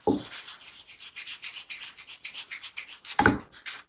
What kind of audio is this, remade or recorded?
recorded